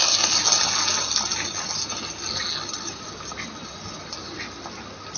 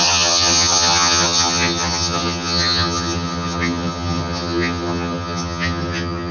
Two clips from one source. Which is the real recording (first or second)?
first